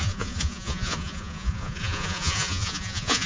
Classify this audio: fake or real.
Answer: fake